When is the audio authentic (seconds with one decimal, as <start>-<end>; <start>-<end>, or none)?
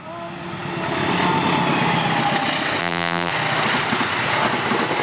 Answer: 0.0-2.8; 3.3-5.0